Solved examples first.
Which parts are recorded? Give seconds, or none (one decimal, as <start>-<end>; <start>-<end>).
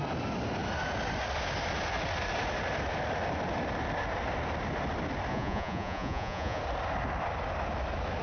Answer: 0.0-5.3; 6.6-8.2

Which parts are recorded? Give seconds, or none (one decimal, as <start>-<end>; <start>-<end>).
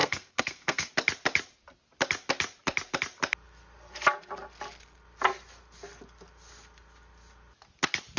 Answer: 0.9-8.2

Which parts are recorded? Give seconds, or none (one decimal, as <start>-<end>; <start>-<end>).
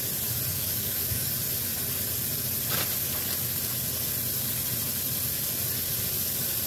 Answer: 0.0-0.5; 1.3-6.7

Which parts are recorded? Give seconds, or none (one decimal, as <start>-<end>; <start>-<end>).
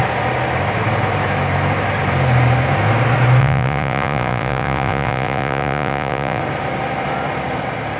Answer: 0.0-3.4; 6.4-8.0